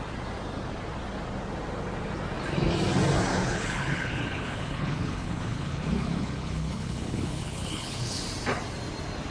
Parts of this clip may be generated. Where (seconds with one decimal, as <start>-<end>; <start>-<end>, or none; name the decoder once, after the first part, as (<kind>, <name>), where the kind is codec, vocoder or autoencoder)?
3.3-8.2 (codec, HILCodec)